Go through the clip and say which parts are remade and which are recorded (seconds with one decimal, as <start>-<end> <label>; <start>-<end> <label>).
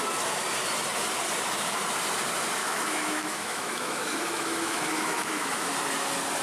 0.0-2.6 recorded; 2.6-5.7 remade; 5.7-6.4 recorded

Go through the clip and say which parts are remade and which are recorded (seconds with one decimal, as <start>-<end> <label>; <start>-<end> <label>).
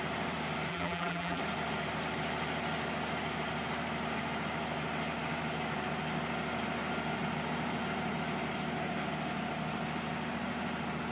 0.0-0.7 recorded; 0.7-1.4 remade; 1.4-11.1 recorded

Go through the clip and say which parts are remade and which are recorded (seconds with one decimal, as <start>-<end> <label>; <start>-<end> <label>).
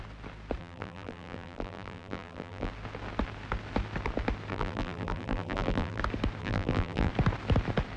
0.0-0.6 recorded; 0.6-2.7 remade; 2.7-4.5 recorded; 4.5-6.0 remade; 6.0-6.4 recorded; 6.4-7.1 remade; 7.1-8.0 recorded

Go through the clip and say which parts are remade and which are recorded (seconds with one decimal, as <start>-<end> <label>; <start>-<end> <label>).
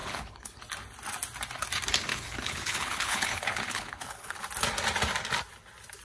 0.0-0.6 remade; 0.6-2.1 recorded; 2.1-4.4 remade; 4.4-6.0 recorded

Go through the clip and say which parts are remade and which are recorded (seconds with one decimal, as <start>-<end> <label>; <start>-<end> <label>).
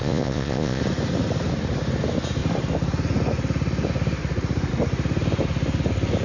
0.0-0.8 remade; 0.8-6.2 recorded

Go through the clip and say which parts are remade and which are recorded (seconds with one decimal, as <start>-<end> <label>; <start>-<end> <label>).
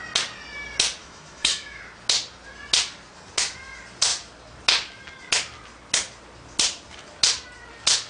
0.0-1.0 recorded; 1.0-1.8 remade; 1.8-8.1 recorded